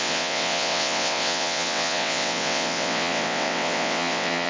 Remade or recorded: remade